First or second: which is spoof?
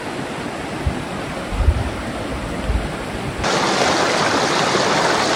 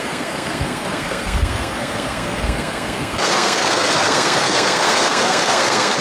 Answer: second